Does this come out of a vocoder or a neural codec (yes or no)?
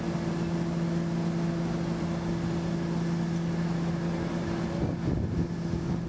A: no